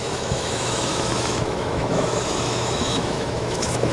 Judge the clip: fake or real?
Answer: fake